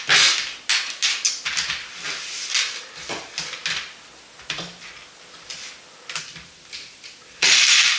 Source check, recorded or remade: recorded